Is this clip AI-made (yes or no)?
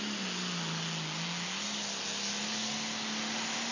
no